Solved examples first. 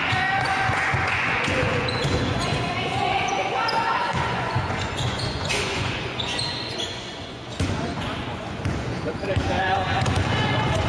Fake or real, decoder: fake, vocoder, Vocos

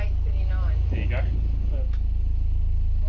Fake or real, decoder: real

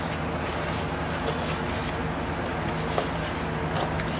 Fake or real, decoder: real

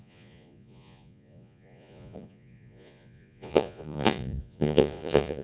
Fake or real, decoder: fake, vocoder, Vocos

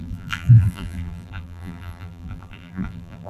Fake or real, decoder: fake, vocoder, BigVGAN v2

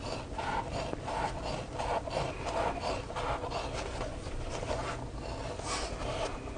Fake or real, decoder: real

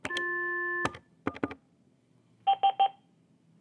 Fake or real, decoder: real